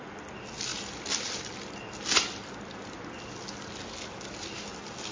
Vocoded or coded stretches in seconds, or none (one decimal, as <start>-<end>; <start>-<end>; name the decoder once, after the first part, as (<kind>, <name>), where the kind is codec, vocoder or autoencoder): none